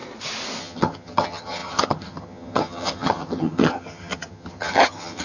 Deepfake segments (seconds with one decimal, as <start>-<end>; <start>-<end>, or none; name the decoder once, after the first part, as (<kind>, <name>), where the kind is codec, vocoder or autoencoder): 0.6-5.2 (vocoder, HiFi-GAN)